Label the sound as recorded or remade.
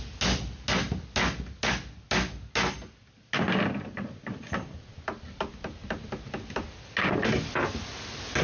recorded